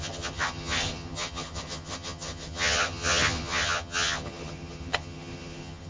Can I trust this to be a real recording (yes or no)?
no